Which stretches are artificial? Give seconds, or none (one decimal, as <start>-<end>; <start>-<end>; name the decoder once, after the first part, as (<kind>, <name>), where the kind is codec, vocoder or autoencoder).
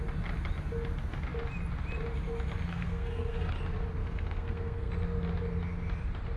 2.7-3.5 (codec, SNAC); 4.0-4.9